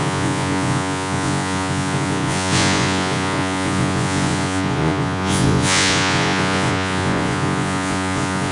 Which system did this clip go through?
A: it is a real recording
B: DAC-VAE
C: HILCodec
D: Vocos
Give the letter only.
D